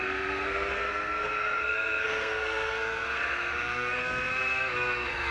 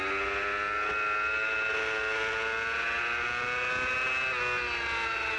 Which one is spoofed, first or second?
first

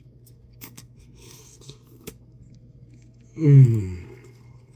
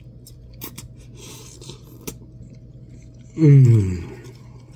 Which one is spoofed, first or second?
first